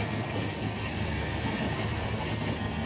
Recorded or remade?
remade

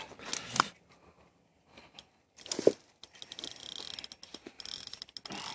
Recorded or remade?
recorded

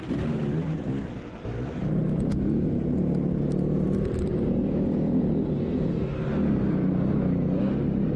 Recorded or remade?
recorded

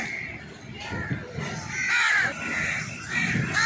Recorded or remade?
recorded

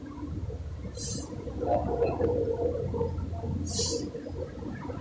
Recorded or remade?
recorded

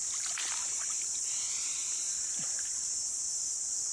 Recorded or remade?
recorded